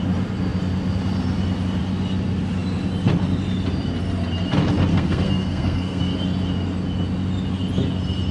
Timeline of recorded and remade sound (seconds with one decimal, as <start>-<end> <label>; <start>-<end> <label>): 0.0-4.9 recorded; 4.9-6.0 remade; 6.0-8.3 recorded